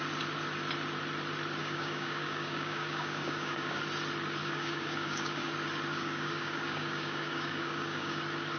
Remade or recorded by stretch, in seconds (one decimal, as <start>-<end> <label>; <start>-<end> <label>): 0.0-1.6 recorded; 1.6-3.8 remade; 3.8-4.4 recorded; 4.4-5.5 remade; 5.5-5.9 recorded; 5.9-8.2 remade; 8.2-8.6 recorded